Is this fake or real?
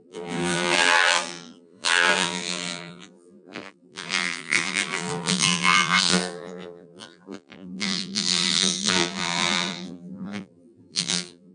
fake